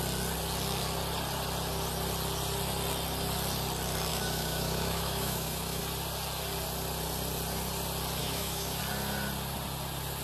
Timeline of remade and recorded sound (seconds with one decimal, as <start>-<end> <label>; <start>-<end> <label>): 0.0-4.1 recorded; 4.1-5.8 remade; 5.8-8.2 recorded; 8.2-8.8 remade; 8.8-10.2 recorded